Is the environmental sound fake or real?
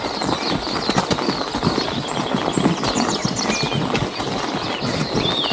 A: real